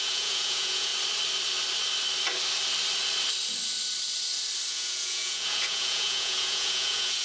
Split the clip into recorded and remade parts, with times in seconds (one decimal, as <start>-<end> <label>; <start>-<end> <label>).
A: 0.0-0.9 remade; 0.9-4.7 recorded; 4.7-7.2 remade